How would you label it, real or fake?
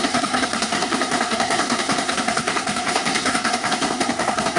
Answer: fake